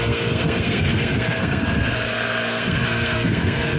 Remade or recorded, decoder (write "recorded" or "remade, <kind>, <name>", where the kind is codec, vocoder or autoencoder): remade, codec, SNAC